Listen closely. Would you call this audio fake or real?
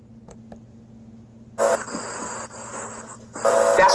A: real